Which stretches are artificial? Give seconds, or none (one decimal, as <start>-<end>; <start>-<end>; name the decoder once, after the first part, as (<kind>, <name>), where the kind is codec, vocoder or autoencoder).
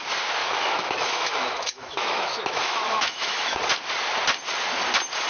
0.4-3.6 (autoencoder, DAC-VAE)